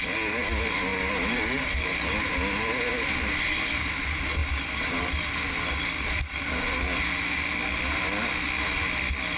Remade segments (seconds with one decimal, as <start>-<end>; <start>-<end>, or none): none